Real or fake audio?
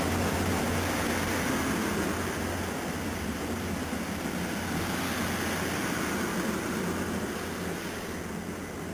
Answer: real